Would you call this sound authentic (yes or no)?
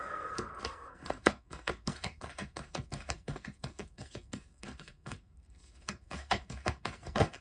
no